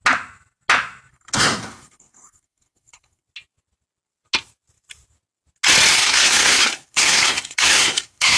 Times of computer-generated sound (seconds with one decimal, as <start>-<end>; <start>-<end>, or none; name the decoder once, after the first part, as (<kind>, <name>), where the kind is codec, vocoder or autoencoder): 1.1-3.2 (codec, SNAC); 5.9-8.4